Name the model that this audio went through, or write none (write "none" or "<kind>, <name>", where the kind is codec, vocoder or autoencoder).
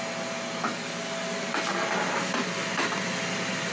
none